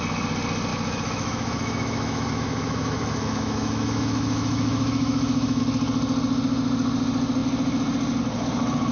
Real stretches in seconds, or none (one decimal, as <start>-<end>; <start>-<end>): 0.0-0.7; 5.6-8.9